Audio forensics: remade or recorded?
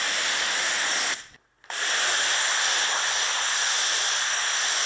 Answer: recorded